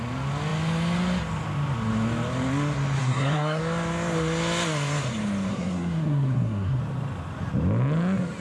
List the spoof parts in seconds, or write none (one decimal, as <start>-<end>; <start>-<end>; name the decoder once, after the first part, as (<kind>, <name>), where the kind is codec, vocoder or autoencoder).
3.0-3.6 (codec, SNAC); 5.5-6.8